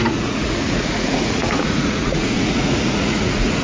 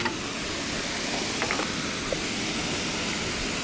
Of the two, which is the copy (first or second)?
first